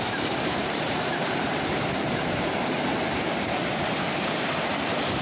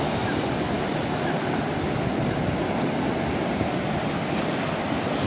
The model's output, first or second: first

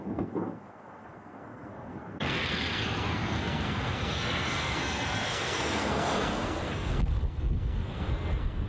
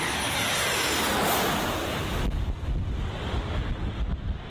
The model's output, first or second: first